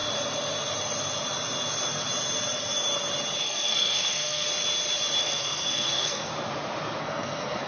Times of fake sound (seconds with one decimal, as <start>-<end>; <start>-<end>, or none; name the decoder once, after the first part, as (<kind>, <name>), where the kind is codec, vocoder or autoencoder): 3.4-4.5 (codec, SNAC); 5.2-6.3; 7.0-7.7